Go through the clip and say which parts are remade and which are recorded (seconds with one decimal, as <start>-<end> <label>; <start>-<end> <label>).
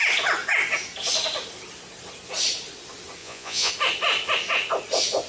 0.0-3.2 recorded; 3.2-3.7 remade; 3.7-5.3 recorded